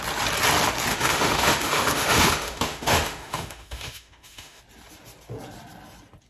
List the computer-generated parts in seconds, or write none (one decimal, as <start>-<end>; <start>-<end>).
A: 0.9-4.6